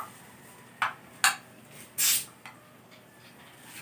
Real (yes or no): yes